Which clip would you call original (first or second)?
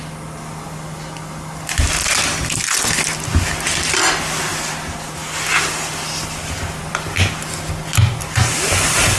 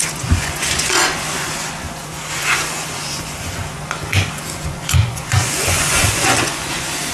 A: first